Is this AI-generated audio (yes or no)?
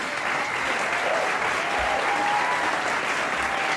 no